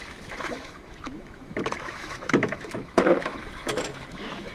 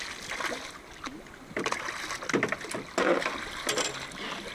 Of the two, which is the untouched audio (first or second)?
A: second